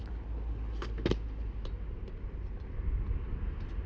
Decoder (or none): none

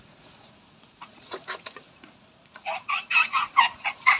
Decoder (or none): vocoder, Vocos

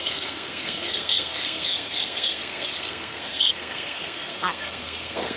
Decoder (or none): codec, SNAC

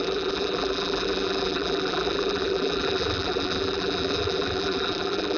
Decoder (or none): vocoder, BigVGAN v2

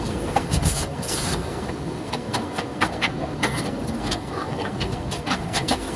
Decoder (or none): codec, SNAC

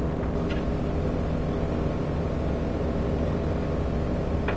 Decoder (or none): none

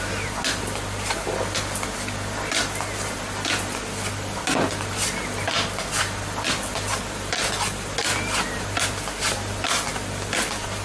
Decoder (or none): none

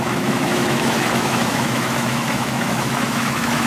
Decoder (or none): autoencoder, DAC-VAE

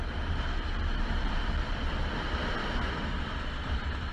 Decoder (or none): none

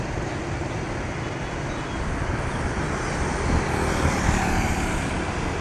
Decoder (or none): none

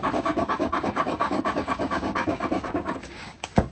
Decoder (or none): codec, DAC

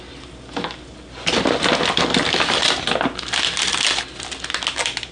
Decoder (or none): none